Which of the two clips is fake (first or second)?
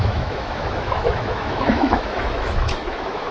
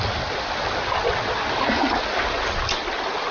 first